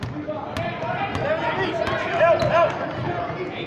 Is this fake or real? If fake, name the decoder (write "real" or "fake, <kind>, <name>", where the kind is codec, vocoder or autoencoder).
real